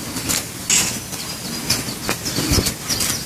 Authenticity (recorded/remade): recorded